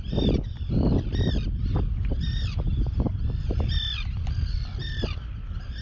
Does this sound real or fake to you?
real